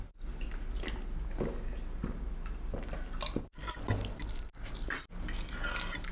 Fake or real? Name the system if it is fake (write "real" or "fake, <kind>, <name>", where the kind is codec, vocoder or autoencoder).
real